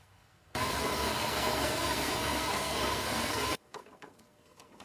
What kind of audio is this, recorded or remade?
remade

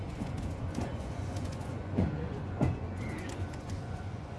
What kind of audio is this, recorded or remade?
remade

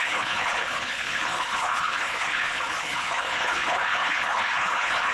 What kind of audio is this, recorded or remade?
remade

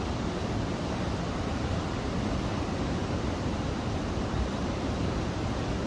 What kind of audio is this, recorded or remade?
remade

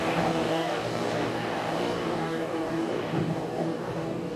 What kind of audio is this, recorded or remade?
remade